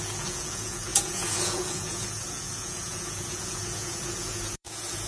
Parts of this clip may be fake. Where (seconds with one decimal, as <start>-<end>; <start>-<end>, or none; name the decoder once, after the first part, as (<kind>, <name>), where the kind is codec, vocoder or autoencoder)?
0.0-5.1 (vocoder, Vocos)